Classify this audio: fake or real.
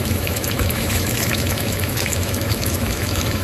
fake